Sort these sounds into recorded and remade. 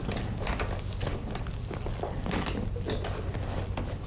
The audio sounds recorded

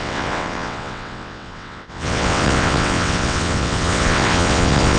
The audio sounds remade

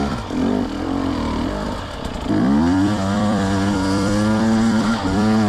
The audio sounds remade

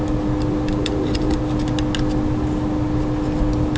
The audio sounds recorded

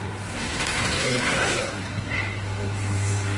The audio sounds remade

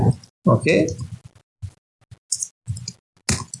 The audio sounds recorded